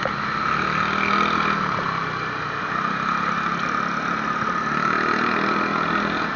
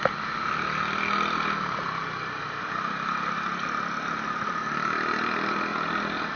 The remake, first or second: second